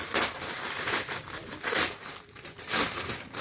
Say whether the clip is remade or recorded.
remade